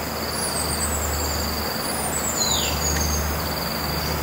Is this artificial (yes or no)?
no